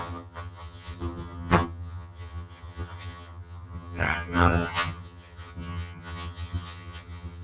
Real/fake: fake